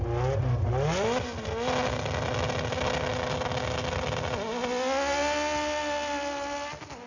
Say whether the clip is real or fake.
real